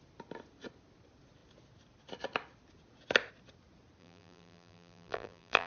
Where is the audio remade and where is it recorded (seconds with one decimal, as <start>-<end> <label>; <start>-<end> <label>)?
0.0-4.0 recorded; 4.0-5.7 remade